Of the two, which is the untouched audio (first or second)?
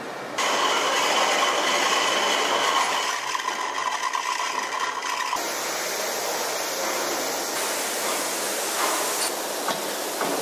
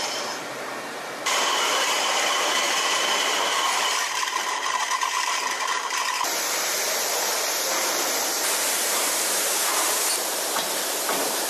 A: first